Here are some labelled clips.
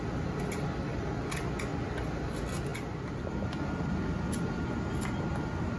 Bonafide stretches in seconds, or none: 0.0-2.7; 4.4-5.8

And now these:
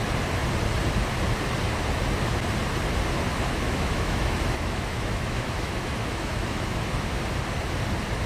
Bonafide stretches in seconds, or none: 0.0-3.3; 7.2-8.3

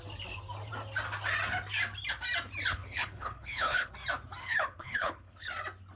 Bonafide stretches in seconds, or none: 0.0-2.7; 3.9-4.4; 5.5-6.0

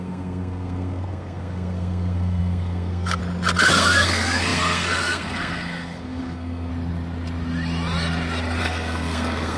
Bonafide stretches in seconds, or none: 3.2-3.7; 6.7-8.6

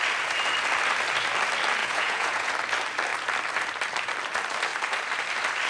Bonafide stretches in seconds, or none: 0.0-1.8; 2.5-5.7

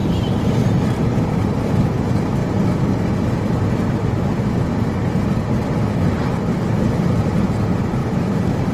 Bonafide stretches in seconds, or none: 1.3-8.0

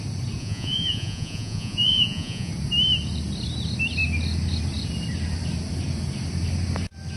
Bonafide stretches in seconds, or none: 0.0-0.4; 2.5-7.2

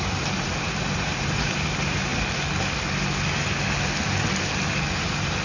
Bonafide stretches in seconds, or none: 2.1-4.8